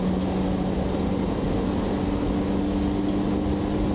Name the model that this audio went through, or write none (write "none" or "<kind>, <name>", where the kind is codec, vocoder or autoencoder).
none